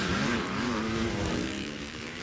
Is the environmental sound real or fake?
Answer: fake